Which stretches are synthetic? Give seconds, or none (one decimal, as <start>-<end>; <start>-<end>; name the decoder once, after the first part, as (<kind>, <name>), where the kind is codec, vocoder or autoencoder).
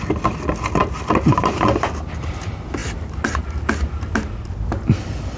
2.8-3.4 (vocoder, BigVGAN v2)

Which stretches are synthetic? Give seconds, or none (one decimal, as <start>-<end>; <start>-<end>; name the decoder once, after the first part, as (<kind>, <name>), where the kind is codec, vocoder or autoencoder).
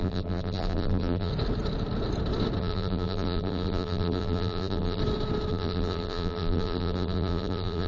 0.0-1.3 (vocoder, BigVGAN v2); 2.6-5.0; 5.5-7.9